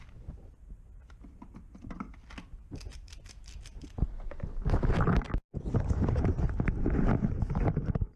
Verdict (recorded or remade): recorded